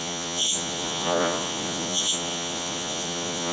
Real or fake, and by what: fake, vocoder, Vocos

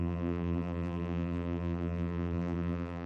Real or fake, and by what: fake, vocoder, BigVGAN v2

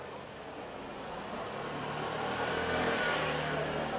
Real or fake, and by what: real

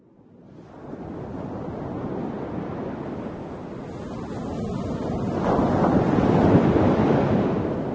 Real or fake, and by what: real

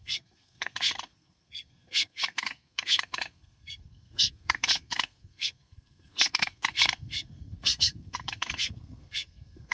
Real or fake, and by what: fake, codec, SNAC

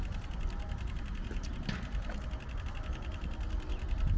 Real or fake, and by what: real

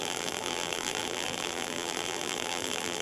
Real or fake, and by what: fake, vocoder, BigVGAN v2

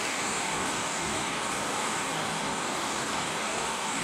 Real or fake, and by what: fake, codec, DAC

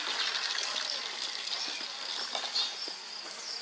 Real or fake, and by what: real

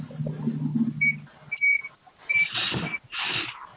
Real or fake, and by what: real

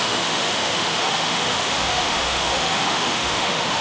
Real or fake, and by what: fake, autoencoder, DAC-VAE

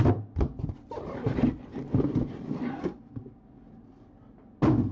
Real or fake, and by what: real